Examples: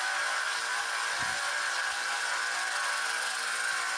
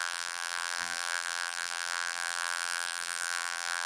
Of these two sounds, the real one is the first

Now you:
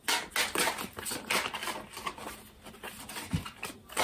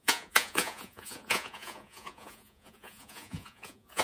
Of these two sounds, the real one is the first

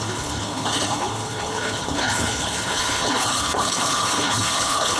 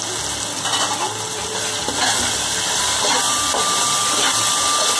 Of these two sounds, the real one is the second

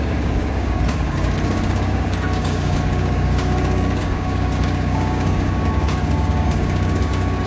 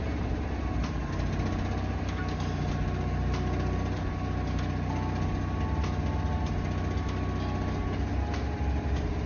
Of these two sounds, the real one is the second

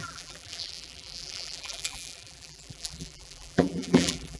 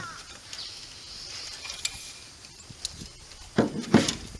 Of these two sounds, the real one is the second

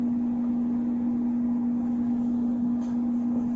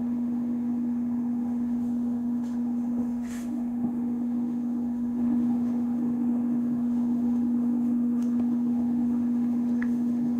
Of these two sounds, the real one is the first